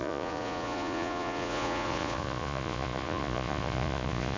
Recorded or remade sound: remade